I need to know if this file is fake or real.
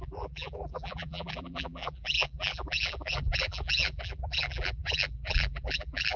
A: fake